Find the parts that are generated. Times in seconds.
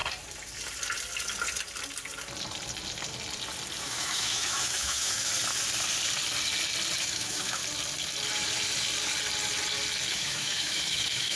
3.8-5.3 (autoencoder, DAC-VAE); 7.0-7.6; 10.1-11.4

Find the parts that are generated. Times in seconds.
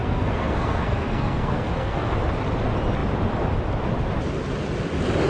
0.0-2.1 (codec, SNAC)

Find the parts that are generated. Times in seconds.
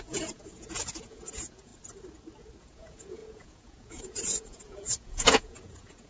0.0-1.7 (vocoder, Vocos); 2.6-6.1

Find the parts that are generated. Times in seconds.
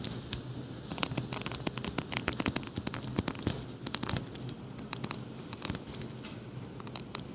0.0-7.3 (vocoder, BigVGAN v2)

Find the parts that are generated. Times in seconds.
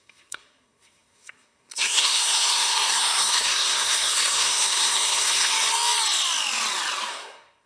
0.0-5.5 (codec, SNAC); 7.1-7.7